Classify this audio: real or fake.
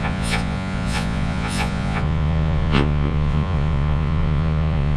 fake